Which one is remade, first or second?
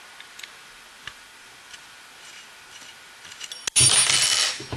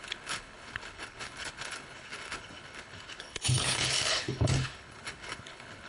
second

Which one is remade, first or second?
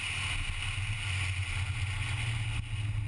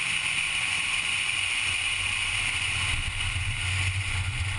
second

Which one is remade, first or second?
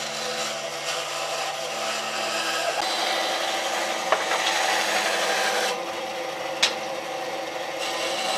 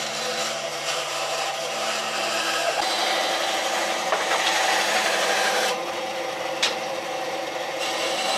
second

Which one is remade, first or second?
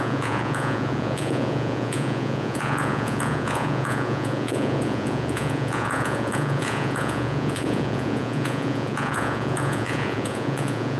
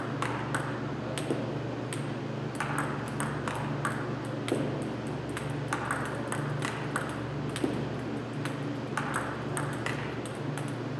first